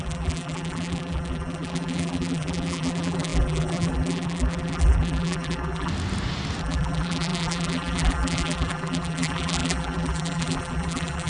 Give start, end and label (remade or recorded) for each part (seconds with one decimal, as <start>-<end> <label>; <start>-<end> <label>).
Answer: 0.0-5.9 remade; 5.9-6.6 recorded; 6.6-11.3 remade

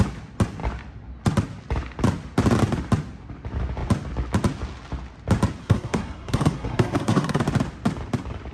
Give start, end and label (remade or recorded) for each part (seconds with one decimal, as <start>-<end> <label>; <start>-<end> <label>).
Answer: 0.0-5.6 recorded; 5.6-7.4 remade; 7.4-8.5 recorded

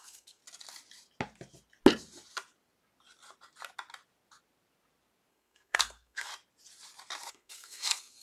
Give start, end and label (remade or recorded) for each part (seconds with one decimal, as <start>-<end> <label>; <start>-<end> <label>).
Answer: 0.0-0.4 remade; 0.4-5.3 recorded; 5.3-6.3 remade; 6.3-7.3 recorded; 7.3-8.2 remade

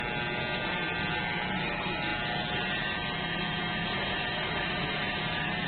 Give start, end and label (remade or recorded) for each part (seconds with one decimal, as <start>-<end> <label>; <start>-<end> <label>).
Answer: 0.0-5.7 recorded

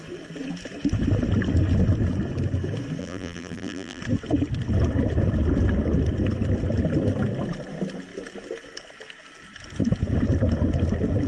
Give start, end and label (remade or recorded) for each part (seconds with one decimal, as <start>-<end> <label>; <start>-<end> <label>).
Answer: 0.0-3.0 recorded; 3.0-4.0 remade; 4.0-11.3 recorded